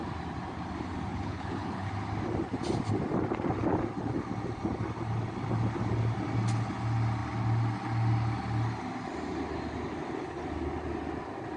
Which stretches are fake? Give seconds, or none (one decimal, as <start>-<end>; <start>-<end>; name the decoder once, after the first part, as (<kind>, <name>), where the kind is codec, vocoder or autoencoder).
1.1-1.9 (codec, HILCodec)